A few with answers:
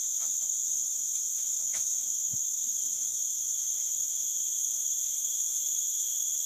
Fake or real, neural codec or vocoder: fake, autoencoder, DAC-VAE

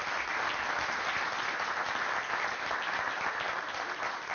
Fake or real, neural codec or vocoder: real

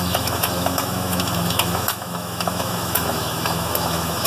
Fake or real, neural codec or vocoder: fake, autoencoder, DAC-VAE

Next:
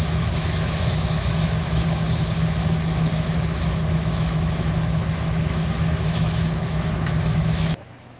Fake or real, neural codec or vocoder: fake, autoencoder, DAC-VAE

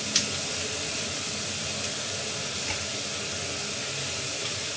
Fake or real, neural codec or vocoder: real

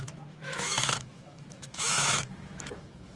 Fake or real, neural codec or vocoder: fake, autoencoder, DAC-VAE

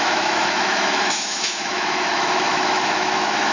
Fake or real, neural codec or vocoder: fake, autoencoder, DAC-VAE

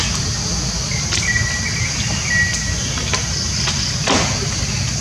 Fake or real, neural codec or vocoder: real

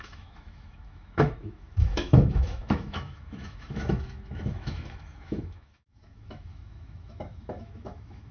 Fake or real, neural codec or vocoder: fake, autoencoder, DAC-VAE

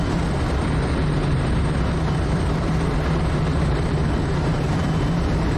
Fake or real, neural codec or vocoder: fake, vocoder, BigVGAN v2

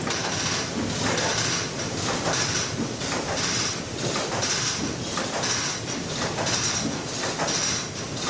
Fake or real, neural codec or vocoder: fake, vocoder, BigVGAN v2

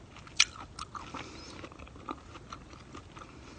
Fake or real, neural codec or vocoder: real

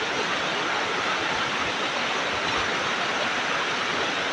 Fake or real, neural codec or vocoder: real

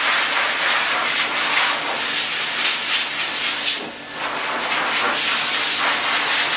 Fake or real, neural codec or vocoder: real